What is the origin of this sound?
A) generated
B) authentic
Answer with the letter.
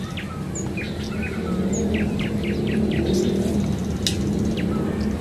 B